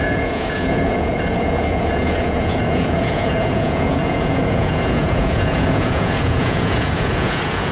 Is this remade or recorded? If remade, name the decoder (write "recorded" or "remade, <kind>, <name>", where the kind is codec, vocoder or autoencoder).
remade, vocoder, Vocos